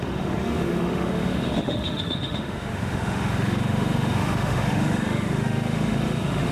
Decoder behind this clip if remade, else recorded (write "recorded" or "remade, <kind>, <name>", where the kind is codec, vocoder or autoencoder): remade, autoencoder, DAC-VAE